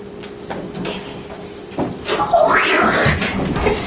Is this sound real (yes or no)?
yes